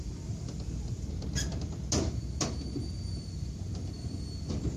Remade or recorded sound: recorded